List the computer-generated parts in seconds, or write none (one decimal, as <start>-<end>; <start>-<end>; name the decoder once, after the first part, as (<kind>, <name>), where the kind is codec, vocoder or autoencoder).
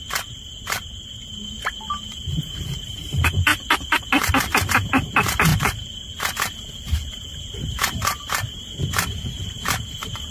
0.0-3.5 (vocoder, BigVGAN v2); 4.7-10.3